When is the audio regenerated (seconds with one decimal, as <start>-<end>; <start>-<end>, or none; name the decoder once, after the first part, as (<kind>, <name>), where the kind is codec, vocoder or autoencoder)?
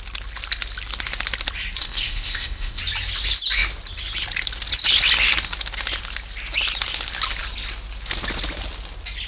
1.8-2.8 (codec, ZipCodec)